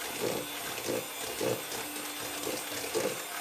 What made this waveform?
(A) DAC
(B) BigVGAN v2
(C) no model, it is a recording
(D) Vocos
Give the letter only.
C